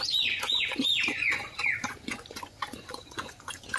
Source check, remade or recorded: remade